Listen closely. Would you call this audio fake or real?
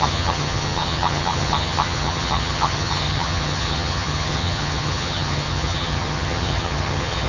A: fake